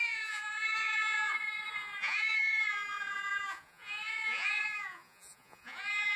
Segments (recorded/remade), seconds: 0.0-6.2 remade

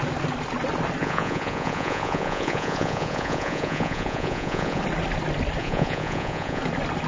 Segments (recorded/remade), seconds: 0.0-1.0 recorded; 1.0-4.8 remade; 4.8-5.6 recorded; 5.6-6.6 remade; 6.6-7.1 recorded